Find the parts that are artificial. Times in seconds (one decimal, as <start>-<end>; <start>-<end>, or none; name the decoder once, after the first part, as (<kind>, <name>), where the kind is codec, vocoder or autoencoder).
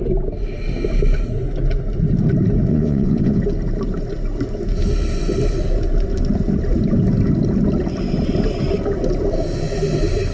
2.7-3.4 (vocoder, Vocos)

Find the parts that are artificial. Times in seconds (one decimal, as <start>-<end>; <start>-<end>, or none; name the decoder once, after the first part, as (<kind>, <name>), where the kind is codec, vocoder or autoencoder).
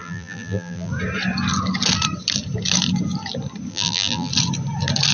0.0-0.9 (vocoder, BigVGAN v2); 3.7-4.3